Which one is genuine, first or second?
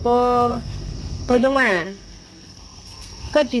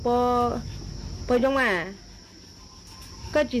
second